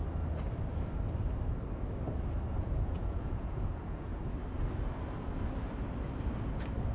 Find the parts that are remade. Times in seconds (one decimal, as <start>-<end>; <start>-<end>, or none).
2.6-4.1